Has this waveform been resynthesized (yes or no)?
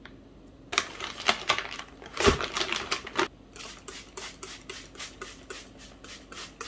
no